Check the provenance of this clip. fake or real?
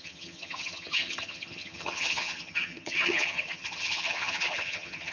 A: fake